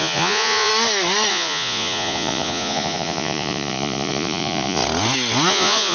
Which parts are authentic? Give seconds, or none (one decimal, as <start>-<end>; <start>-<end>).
0.7-1.3; 4.8-5.5